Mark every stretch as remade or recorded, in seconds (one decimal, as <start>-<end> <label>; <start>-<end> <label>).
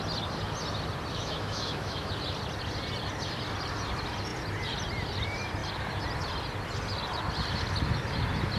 0.0-1.1 recorded; 1.1-2.1 remade; 2.1-8.6 recorded